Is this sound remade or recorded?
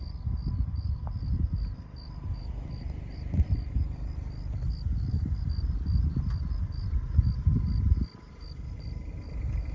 recorded